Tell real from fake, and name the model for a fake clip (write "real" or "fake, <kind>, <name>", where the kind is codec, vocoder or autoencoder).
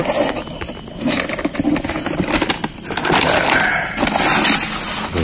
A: real